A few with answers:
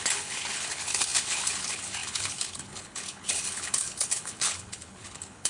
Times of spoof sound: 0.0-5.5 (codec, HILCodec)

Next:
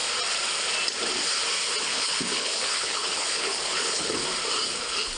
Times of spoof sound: 1.8-4.2 (codec, HILCodec); 4.8-5.2

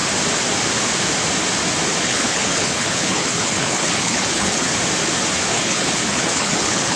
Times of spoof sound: 2.0-4.7 (codec, HILCodec); 5.5-7.0

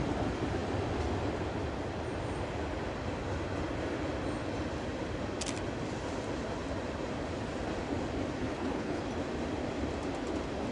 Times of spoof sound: 8.4-9.0 (codec, HILCodec)

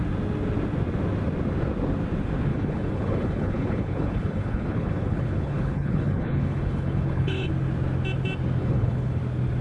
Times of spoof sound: 2.5-7.5 (codec, HILCodec); 8.6-9.2

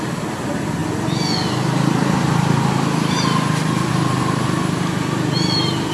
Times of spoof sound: none